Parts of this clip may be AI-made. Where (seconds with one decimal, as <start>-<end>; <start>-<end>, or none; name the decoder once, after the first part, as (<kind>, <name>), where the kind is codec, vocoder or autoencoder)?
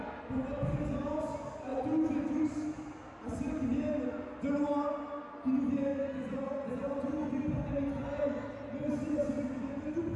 none